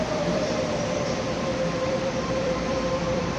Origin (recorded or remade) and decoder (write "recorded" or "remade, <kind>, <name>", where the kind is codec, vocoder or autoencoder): remade, vocoder, BigVGAN v2